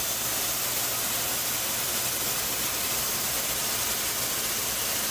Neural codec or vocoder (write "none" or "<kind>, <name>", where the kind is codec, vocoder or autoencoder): none